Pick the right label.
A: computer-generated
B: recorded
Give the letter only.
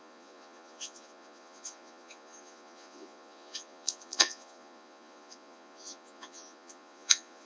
A